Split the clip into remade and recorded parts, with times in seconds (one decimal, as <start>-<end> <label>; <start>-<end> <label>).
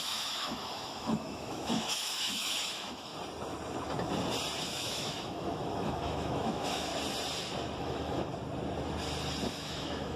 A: 0.0-3.1 remade; 3.1-4.6 recorded; 4.6-6.9 remade; 6.9-7.8 recorded; 7.8-8.3 remade; 8.3-9.5 recorded; 9.5-10.2 remade